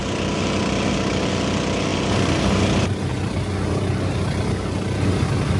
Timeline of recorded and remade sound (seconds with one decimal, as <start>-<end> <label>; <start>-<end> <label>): 0.0-5.6 recorded